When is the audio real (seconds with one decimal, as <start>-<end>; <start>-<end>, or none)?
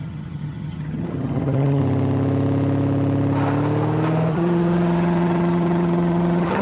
1.8-4.3